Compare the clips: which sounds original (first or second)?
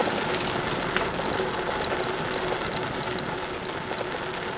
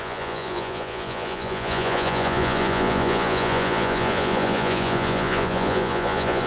first